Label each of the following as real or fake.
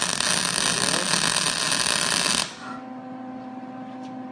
real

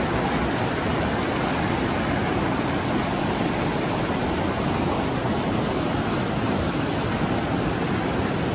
real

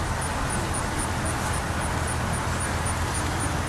real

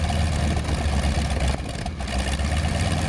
real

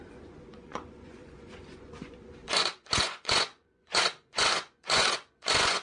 fake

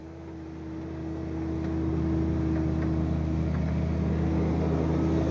real